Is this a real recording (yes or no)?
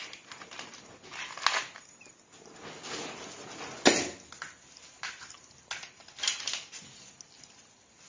yes